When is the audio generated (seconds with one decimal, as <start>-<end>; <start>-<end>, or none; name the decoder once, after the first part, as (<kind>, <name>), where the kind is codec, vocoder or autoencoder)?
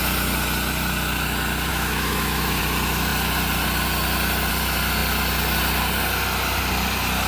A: 1.7-2.6 (autoencoder, DAC-VAE)